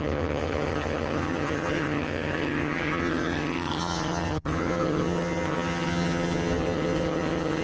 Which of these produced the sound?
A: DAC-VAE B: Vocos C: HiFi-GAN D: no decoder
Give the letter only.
C